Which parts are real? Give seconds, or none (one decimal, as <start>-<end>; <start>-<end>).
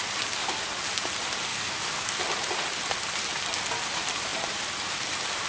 0.0-1.5; 2.2-5.5